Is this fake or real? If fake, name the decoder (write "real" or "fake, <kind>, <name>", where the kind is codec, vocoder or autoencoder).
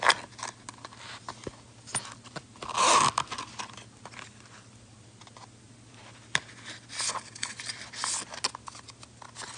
real